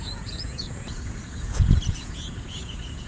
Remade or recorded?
remade